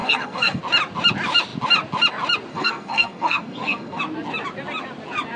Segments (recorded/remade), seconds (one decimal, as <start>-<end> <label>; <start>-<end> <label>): 0.0-0.6 remade; 0.6-2.5 recorded; 2.5-4.0 remade; 4.0-5.4 recorded